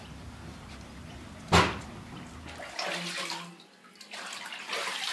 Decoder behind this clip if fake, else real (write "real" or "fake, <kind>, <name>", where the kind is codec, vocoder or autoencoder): real